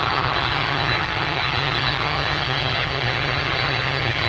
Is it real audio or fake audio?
fake